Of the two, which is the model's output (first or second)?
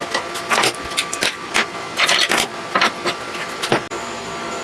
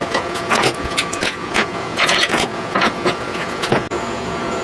second